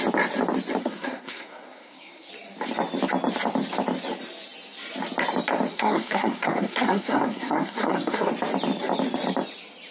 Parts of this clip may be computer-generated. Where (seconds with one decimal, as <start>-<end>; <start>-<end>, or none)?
0.8-2.3; 5.7-8.3